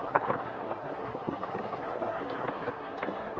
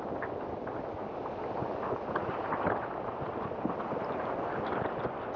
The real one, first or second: second